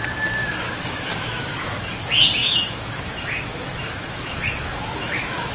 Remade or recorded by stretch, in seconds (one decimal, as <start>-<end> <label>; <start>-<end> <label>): 0.0-0.4 recorded; 0.4-1.9 remade; 1.9-2.4 recorded; 2.4-5.5 remade